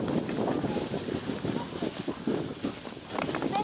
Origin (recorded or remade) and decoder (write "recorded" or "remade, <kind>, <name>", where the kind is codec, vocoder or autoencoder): remade, vocoder, BigVGAN v2